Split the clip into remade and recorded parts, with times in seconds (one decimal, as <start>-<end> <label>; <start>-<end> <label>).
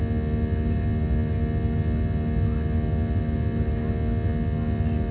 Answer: 0.0-5.1 recorded